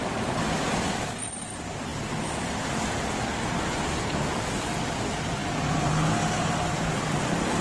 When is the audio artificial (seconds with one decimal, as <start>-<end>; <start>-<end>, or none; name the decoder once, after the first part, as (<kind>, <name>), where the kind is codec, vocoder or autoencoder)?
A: 0.0-0.9 (vocoder, BigVGAN v2)